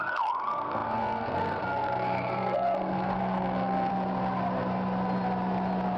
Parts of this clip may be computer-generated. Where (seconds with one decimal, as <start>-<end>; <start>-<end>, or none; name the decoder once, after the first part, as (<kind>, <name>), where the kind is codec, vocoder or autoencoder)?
0.0-3.9 (codec, SNAC)